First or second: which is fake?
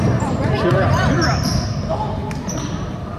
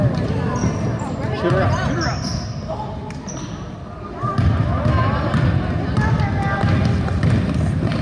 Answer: first